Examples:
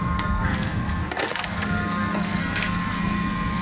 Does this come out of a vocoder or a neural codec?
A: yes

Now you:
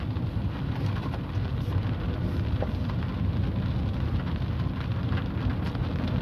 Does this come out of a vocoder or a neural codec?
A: no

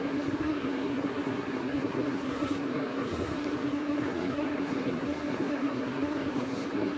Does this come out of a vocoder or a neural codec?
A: yes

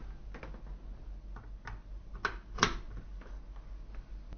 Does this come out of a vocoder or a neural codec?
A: no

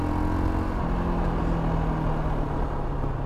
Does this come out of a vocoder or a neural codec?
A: no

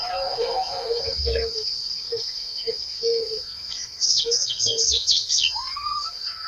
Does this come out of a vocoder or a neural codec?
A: yes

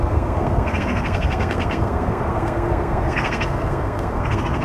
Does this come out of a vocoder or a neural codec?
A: yes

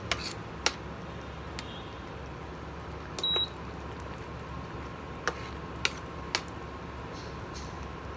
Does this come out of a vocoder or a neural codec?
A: no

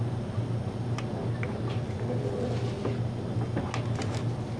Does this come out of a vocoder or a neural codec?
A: no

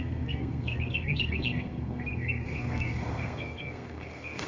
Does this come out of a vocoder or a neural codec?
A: yes